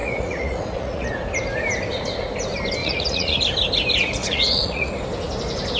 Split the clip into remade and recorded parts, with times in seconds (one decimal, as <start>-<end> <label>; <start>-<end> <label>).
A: 0.0-1.1 remade; 1.1-2.8 recorded; 2.8-3.4 remade; 3.4-4.2 recorded; 4.2-4.9 remade; 4.9-5.8 recorded

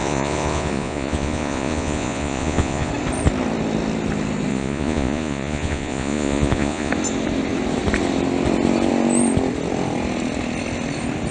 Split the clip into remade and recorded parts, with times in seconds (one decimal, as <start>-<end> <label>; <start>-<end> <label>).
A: 0.0-2.9 remade; 2.9-4.5 recorded; 4.5-6.9 remade; 6.9-11.3 recorded

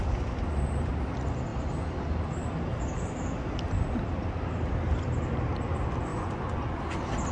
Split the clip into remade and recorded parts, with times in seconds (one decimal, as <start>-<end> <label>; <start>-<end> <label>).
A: 0.0-6.1 recorded; 6.1-6.8 remade; 6.8-7.3 recorded

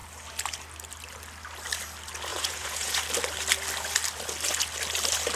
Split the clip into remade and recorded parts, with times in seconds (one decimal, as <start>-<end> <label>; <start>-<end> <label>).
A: 0.0-2.3 recorded; 2.3-3.0 remade; 3.0-5.4 recorded

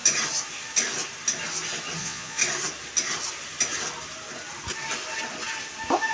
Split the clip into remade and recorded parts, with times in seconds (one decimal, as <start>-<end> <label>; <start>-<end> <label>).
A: 0.0-2.0 recorded; 2.0-2.4 remade; 2.4-6.1 recorded